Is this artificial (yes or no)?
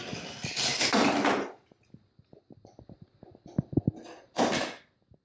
no